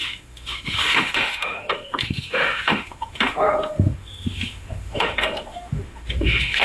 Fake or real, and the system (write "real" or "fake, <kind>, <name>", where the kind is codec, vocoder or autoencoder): fake, autoencoder, DAC-VAE